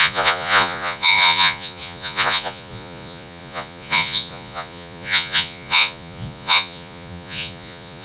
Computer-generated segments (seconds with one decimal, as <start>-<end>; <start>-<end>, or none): 0.0-8.0